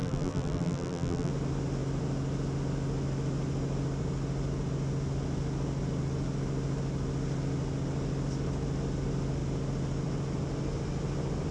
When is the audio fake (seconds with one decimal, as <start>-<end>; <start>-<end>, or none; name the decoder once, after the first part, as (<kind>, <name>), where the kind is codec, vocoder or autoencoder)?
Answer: 0.0-1.3 (vocoder, BigVGAN v2)